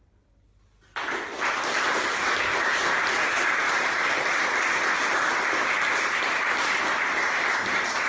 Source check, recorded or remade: recorded